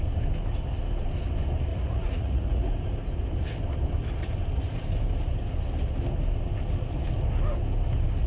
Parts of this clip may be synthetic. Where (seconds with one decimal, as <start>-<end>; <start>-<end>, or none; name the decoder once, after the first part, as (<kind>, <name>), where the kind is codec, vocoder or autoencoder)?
1.7-2.7 (vocoder, Vocos)